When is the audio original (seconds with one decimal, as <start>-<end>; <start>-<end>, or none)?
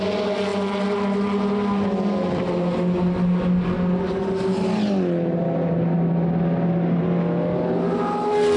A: 0.0-8.6